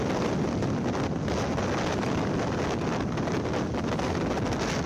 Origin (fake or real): real